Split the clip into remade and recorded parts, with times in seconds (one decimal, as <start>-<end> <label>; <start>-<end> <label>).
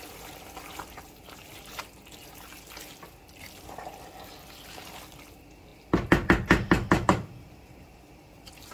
0.0-2.2 remade; 2.2-3.2 recorded; 3.2-5.7 remade; 5.7-7.4 recorded; 7.4-8.7 remade